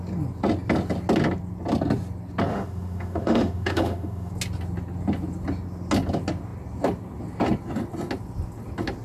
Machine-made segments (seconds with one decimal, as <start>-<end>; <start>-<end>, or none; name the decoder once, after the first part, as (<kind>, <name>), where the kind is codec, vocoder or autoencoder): 2.5-4.3 (autoencoder, DAC-VAE)